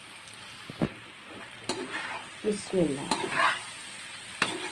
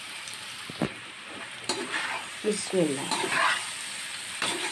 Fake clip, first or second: second